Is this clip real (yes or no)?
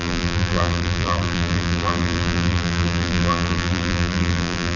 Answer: no